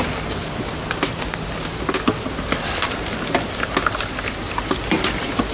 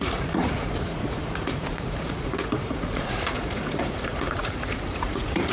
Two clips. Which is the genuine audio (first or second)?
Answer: first